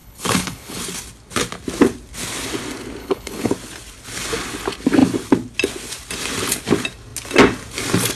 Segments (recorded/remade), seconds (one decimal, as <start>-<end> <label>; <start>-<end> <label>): 0.0-0.8 remade; 0.8-3.0 recorded; 3.0-3.5 remade; 3.5-8.2 recorded